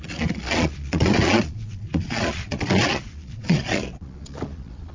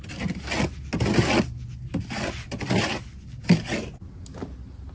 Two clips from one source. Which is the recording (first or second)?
second